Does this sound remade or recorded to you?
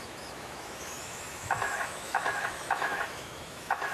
remade